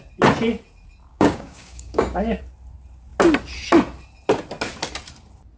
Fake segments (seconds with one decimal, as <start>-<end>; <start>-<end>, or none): 1.1-2.4